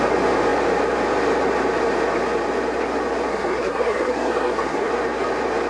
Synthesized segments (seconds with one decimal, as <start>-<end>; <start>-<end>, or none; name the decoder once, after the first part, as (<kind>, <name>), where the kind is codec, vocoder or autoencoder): 3.3-4.9 (codec, SNAC)